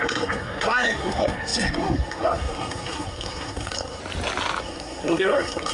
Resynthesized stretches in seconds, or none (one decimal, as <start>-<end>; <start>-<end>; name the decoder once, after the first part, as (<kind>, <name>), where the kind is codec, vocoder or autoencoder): 0.0-4.0 (codec, SNAC); 4.6-5.7